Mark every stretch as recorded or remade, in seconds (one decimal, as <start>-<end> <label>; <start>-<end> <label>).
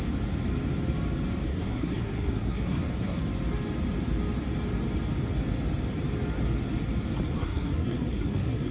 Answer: 0.0-1.5 recorded; 1.5-3.2 remade; 3.2-7.4 recorded; 7.4-8.7 remade